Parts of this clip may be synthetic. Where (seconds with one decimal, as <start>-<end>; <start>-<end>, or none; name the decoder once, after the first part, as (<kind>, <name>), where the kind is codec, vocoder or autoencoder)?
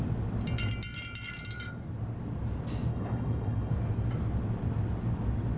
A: 2.9-3.7 (codec, HILCodec)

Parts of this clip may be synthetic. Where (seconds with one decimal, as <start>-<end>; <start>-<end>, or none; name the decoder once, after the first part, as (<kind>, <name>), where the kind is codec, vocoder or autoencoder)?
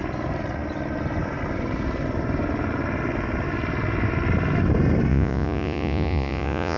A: 5.1-6.8 (vocoder, Vocos)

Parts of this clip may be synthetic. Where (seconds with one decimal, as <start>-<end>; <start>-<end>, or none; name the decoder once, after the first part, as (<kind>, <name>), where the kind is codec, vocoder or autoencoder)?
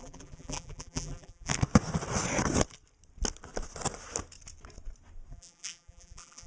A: 0.0-1.5 (vocoder, BigVGAN v2); 5.3-6.5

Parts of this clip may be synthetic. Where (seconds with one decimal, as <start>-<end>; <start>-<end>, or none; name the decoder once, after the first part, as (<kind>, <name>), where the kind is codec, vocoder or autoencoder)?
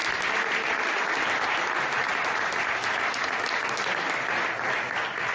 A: none